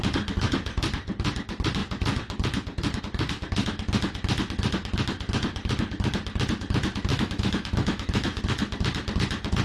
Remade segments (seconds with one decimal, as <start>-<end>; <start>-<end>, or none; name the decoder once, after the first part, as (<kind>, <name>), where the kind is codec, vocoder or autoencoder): 7.1-8.4 (autoencoder, DAC-VAE)